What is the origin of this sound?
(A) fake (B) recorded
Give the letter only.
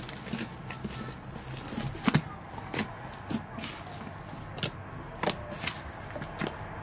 B